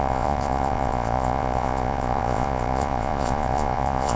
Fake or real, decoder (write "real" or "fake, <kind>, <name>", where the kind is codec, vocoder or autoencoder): fake, vocoder, Vocos